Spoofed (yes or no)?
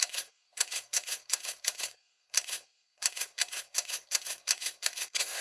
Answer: yes